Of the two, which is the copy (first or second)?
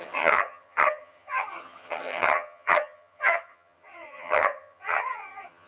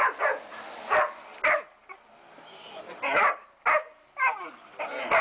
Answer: first